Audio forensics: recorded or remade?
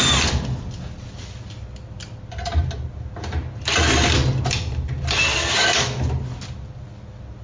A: recorded